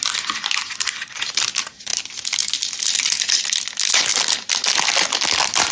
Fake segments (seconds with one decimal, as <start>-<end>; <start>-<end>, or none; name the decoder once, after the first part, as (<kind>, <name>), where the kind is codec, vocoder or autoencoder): none